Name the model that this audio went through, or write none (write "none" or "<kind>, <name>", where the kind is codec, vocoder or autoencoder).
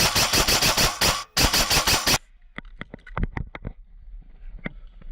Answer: none